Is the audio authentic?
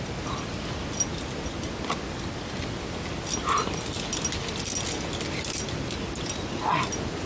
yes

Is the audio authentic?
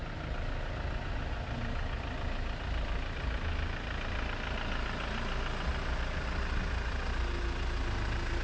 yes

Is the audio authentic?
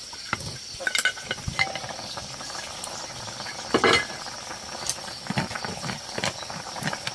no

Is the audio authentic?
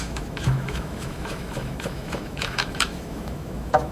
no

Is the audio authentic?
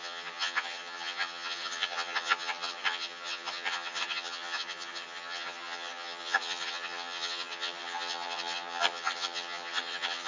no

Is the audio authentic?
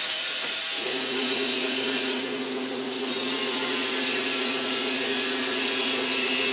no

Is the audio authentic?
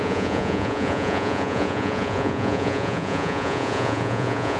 no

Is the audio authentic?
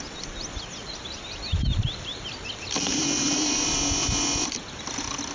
yes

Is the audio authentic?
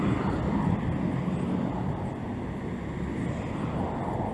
yes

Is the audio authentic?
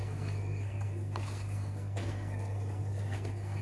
no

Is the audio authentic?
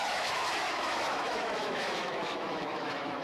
no